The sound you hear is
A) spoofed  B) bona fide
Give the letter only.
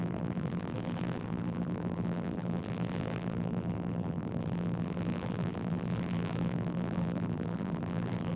A